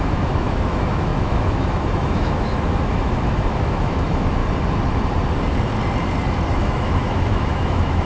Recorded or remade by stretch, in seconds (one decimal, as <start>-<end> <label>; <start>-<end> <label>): 0.0-4.4 remade; 4.4-6.5 recorded; 6.5-8.0 remade